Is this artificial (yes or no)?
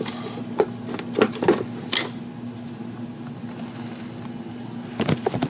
no